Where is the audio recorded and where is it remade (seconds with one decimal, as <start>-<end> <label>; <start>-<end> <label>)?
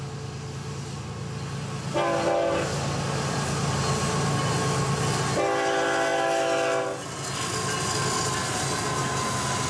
0.0-9.7 recorded